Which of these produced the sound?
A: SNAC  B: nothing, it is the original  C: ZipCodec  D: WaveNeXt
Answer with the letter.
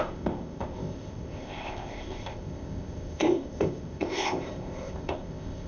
C